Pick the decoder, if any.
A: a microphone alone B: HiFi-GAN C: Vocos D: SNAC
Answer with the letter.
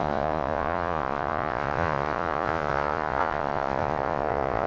C